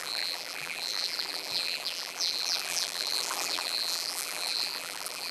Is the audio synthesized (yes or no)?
yes